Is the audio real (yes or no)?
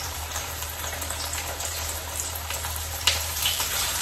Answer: no